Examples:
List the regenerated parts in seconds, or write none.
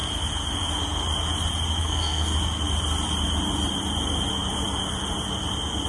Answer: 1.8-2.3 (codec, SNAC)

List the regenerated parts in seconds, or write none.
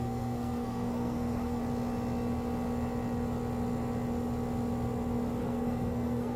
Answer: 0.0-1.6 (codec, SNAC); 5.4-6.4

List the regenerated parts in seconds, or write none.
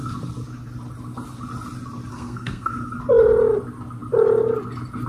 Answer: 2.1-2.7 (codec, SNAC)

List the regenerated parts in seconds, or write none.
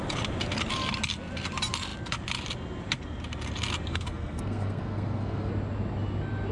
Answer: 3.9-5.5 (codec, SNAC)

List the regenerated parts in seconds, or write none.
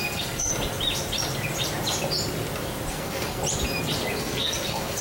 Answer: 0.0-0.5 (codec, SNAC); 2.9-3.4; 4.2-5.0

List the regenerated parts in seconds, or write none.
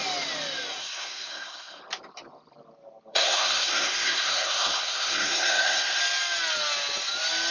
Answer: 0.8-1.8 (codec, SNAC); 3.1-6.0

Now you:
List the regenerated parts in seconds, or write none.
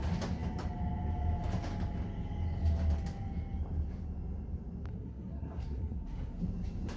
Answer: 4.9-6.4 (codec, SNAC)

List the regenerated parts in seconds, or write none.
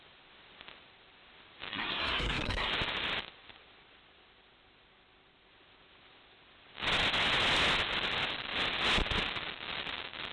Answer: 1.7-2.7 (codec, SNAC)